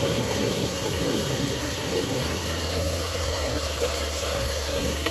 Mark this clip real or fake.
fake